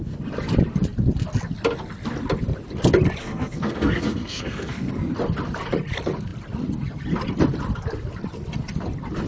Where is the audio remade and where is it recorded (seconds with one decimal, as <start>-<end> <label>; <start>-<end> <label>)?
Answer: 0.0-3.2 recorded; 3.2-4.9 remade; 4.9-9.3 recorded